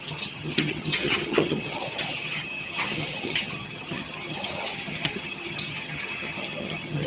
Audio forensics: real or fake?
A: fake